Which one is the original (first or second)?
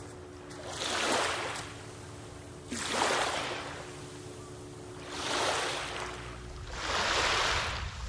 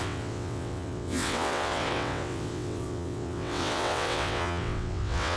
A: first